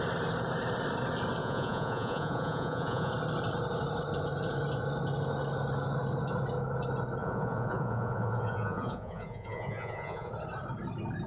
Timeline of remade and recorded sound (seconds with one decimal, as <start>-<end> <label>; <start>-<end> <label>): 0.0-1.4 recorded; 1.4-3.1 remade; 3.1-7.2 recorded; 7.2-10.3 remade; 10.3-11.3 recorded